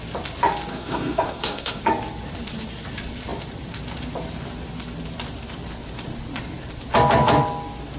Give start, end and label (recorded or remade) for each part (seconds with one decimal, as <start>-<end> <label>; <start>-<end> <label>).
0.0-0.7 recorded; 0.7-1.8 remade; 1.8-8.0 recorded